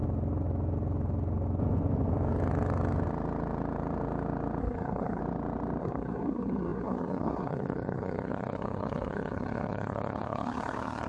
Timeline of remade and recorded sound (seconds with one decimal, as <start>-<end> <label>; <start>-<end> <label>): 0.0-4.6 recorded; 4.6-5.2 remade; 5.2-5.8 recorded; 5.8-11.1 remade